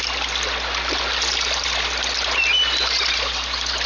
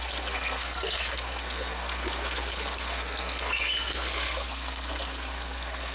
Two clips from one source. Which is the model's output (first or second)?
second